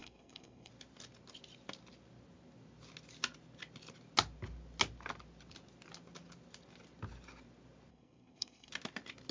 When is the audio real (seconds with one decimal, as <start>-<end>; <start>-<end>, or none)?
0.7-7.9; 8.7-9.3